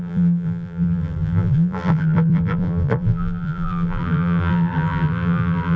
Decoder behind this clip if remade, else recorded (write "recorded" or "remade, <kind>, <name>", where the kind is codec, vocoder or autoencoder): remade, vocoder, BigVGAN v2